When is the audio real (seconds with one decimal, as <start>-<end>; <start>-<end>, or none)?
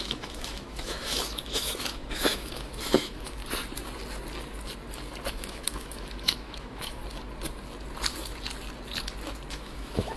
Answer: 3.4-5.3; 7.0-9.5